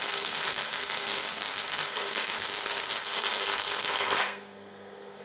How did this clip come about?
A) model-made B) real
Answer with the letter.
A